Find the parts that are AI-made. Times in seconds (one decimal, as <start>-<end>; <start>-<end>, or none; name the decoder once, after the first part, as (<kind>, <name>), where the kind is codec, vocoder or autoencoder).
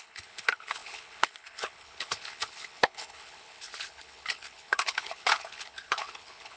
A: 0.0-6.6 (codec, HILCodec)